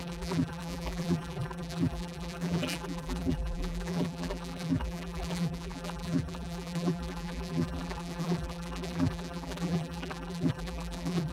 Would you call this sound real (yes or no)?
no